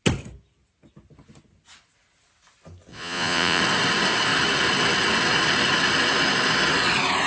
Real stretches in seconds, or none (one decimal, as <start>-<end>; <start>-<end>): 0.0-2.9; 3.6-7.3